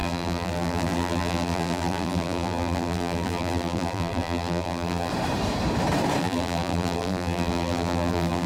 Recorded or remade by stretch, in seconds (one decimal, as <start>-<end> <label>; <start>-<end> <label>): 0.0-5.1 remade; 5.1-6.2 recorded; 6.2-8.5 remade